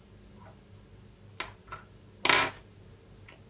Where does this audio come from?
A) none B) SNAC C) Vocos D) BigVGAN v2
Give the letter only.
A